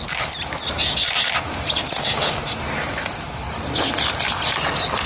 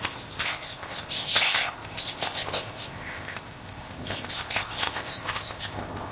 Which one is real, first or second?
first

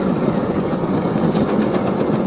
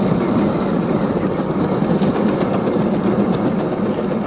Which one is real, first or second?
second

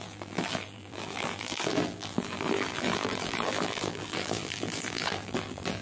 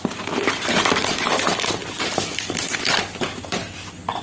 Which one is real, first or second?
second